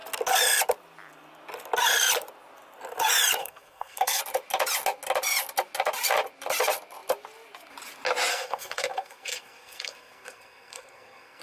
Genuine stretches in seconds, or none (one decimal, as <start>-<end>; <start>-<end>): 0.0-3.4; 4.2-8.3